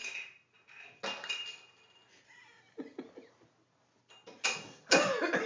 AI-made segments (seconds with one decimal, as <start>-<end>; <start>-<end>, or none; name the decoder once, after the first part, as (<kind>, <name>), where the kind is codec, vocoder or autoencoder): none